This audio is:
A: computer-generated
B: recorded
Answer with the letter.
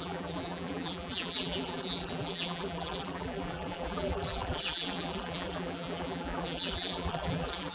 A